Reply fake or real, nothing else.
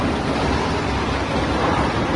real